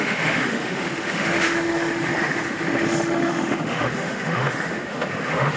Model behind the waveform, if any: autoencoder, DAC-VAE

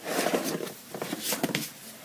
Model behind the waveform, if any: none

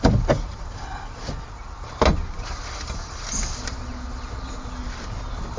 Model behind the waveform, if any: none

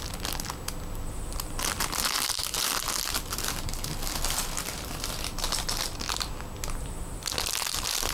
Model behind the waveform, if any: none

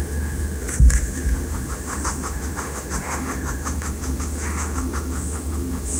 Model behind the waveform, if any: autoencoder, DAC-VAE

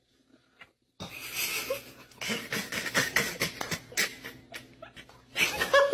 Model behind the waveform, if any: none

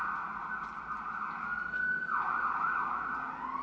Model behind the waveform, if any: none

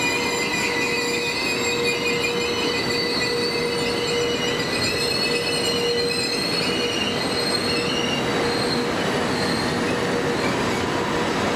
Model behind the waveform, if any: none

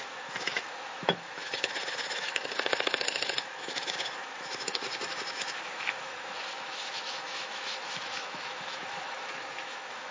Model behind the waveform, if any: autoencoder, DAC-VAE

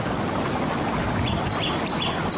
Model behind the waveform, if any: none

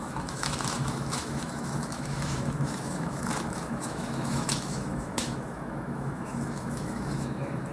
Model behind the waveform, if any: autoencoder, DAC-VAE